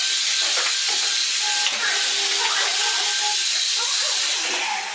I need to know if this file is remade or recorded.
recorded